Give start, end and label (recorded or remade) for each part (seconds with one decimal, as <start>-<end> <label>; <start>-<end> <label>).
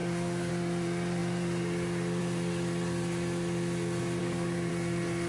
0.0-0.5 remade; 0.5-4.2 recorded; 4.2-4.7 remade; 4.7-5.3 recorded